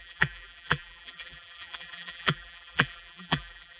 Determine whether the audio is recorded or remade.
remade